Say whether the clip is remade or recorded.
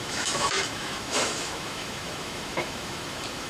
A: remade